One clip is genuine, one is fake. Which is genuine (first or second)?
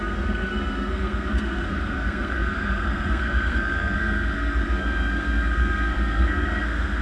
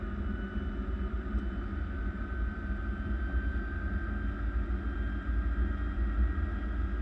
second